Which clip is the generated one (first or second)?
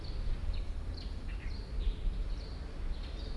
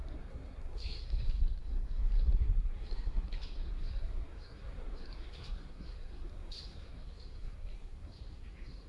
second